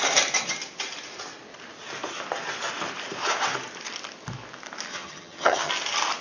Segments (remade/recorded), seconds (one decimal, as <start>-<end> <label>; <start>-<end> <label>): 0.0-4.9 recorded; 4.9-5.7 remade; 5.7-6.2 recorded